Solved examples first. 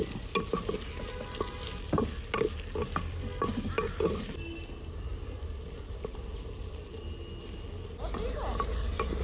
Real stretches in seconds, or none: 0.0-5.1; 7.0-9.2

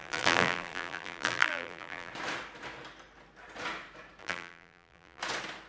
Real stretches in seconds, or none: 2.1-4.2; 5.2-5.7

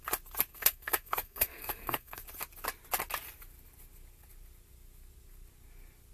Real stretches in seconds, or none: 0.0-0.5; 2.2-6.1

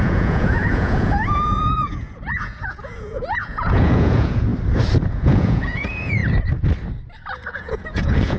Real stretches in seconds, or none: 4.5-5.1; 6.2-7.5

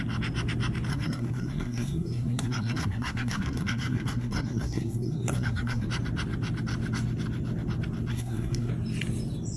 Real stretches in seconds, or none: 0.0-0.9; 5.9-8.1; 8.7-9.6